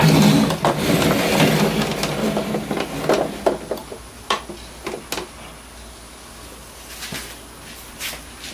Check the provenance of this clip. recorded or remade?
recorded